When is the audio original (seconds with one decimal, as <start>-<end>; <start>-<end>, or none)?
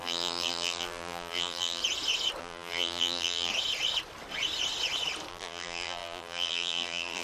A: 1.8-2.4; 3.5-5.3